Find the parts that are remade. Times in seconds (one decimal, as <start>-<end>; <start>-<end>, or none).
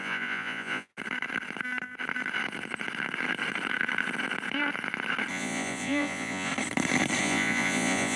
0.0-0.9; 5.3-6.5; 7.2-8.2